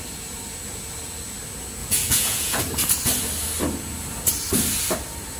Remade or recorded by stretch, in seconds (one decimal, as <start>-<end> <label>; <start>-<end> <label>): 0.0-1.8 recorded; 1.8-2.6 remade; 2.6-5.4 recorded